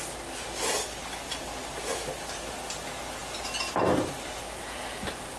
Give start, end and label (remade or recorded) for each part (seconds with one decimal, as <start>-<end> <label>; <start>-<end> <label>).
0.0-5.4 recorded